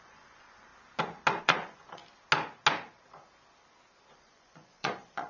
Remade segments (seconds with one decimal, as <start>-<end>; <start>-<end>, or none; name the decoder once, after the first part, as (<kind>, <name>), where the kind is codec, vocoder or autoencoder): 0.0-0.7 (vocoder, Vocos); 1.4-2.0; 4.1-5.3